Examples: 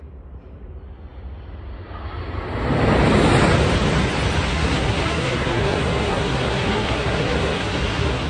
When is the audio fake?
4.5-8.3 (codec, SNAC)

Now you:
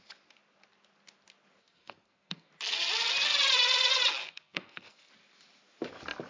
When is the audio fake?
1.6-2.5 (codec, SNAC); 4.2-5.1

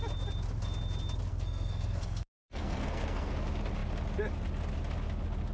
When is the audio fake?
1.3-3.3 (codec, SNAC)

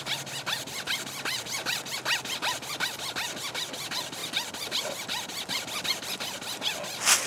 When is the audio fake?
none

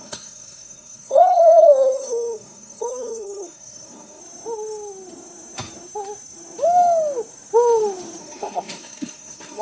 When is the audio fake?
0.0-4.2 (codec, SNAC); 8.2-9.6